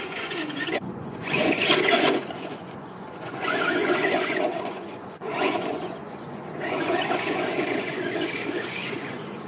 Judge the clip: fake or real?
fake